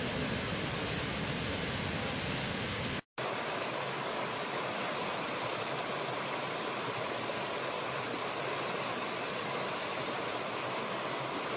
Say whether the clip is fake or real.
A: real